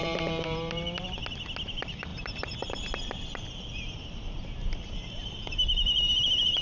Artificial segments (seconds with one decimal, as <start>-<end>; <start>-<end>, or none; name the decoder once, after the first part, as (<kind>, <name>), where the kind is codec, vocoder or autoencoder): 0.0-1.2 (vocoder, BigVGAN v2); 1.7-6.6